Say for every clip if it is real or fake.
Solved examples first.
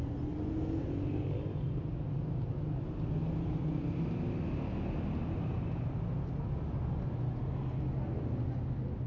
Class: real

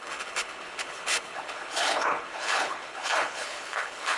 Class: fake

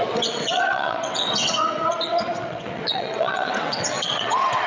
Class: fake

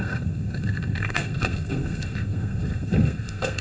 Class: fake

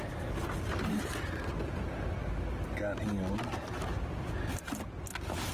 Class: real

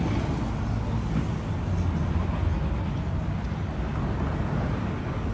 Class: real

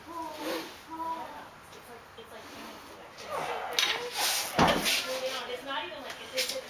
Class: real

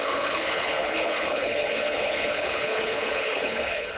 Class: fake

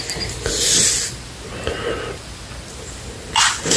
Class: real